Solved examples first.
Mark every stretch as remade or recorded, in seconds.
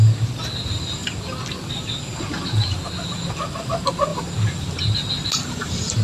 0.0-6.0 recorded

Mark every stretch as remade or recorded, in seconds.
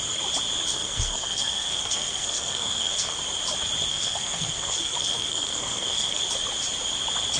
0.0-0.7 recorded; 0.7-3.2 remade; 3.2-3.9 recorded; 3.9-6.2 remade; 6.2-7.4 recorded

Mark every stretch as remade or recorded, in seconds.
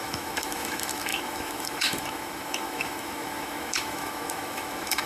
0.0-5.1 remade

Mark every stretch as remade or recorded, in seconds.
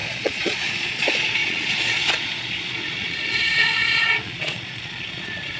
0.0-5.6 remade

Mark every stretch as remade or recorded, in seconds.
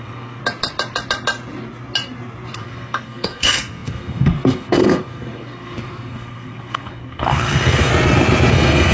0.0-0.4 remade; 0.4-2.6 recorded; 2.6-7.9 remade; 7.9-8.5 recorded; 8.5-8.9 remade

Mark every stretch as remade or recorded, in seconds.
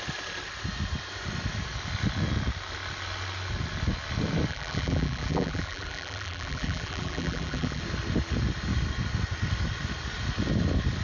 0.0-4.5 recorded; 4.5-7.8 remade; 7.8-11.0 recorded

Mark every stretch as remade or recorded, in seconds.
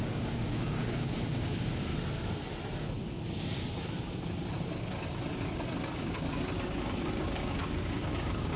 0.0-1.9 remade; 1.9-6.8 recorded; 6.8-8.6 remade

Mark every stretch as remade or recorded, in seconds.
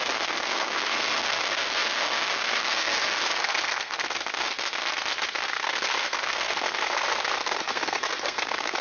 0.0-4.8 remade; 4.8-5.4 recorded; 5.4-8.8 remade